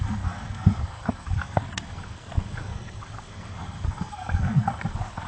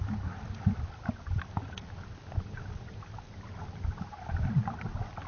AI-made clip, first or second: first